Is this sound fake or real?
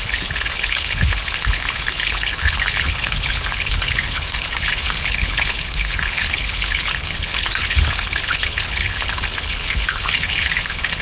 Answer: fake